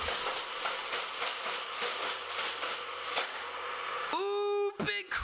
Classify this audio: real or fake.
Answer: real